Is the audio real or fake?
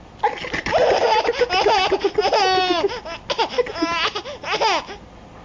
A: real